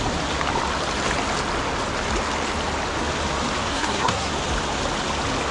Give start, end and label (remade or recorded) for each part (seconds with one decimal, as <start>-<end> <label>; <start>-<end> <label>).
0.0-3.7 recorded; 3.7-4.3 remade; 4.3-5.5 recorded